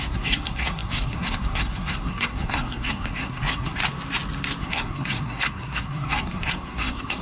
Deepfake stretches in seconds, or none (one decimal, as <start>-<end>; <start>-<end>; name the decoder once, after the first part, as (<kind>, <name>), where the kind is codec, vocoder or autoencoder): 0.0-3.8 (codec, SNAC); 4.6-7.2